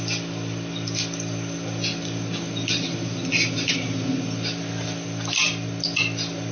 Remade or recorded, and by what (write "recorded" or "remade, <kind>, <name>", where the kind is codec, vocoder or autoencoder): recorded